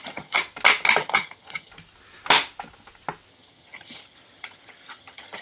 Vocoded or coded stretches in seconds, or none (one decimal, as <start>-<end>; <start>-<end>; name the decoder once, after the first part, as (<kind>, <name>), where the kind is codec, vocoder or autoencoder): 0.0-0.4 (vocoder, HiFi-GAN); 1.0-1.7; 3.3-5.4